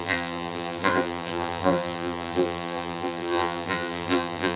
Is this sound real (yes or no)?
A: no